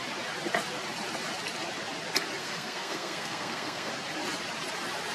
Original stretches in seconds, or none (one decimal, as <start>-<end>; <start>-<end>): 0.0-2.4; 3.9-5.1

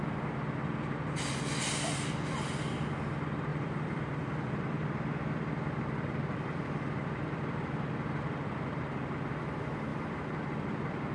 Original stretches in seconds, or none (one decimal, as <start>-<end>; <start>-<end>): 0.0-3.5; 8.8-9.9